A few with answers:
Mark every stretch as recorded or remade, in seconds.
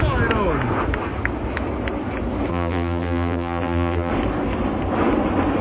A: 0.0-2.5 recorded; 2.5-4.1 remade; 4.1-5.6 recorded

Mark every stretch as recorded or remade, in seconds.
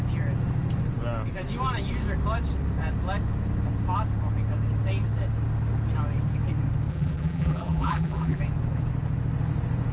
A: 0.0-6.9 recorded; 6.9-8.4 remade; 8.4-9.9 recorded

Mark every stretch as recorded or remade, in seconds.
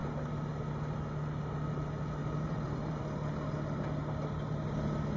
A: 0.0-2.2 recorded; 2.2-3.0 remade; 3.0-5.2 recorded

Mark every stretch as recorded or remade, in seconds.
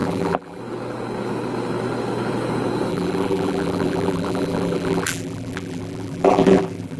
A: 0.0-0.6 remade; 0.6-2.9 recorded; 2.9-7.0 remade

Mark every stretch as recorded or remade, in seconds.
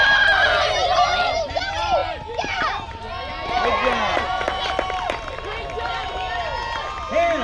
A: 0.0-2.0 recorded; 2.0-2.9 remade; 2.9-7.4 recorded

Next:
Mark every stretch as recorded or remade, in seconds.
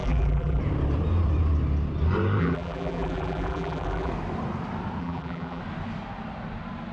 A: 0.0-0.6 remade; 0.6-2.4 recorded; 2.4-4.1 remade; 4.1-5.0 recorded; 5.0-5.6 remade; 5.6-6.9 recorded